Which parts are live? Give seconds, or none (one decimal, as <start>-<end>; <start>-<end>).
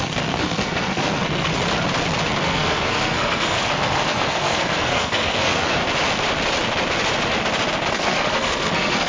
1.5-2.4; 5.8-7.9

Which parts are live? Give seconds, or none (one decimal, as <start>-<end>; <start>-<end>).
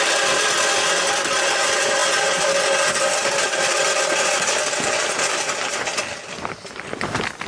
0.0-7.5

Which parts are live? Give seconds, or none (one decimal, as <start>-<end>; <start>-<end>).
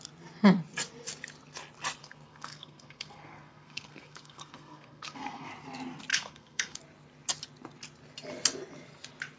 0.0-2.0; 5.5-6.1; 6.8-9.4